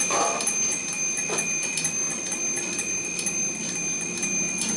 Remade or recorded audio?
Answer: recorded